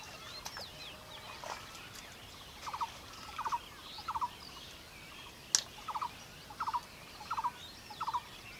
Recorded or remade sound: recorded